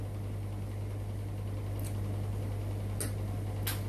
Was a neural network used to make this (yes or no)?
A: no